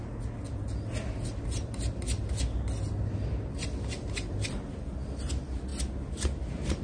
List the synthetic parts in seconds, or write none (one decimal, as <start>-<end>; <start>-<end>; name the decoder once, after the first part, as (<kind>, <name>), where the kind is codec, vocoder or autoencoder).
none